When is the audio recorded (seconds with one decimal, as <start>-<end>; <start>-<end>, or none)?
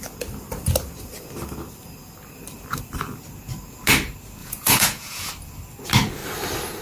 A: 0.0-4.4; 5.3-6.8